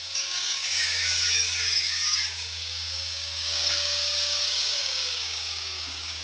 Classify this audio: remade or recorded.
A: remade